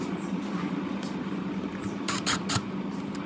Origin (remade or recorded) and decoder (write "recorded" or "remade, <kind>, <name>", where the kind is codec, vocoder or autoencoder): recorded